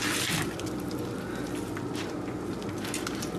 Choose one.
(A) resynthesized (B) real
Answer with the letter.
B